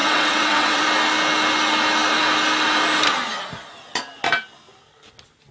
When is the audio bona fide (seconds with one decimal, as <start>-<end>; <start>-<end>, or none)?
0.8-5.5